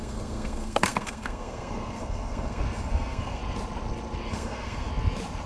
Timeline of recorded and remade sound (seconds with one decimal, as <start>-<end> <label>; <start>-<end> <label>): 0.0-3.4 remade; 3.4-4.3 recorded; 4.3-4.9 remade; 4.9-5.5 recorded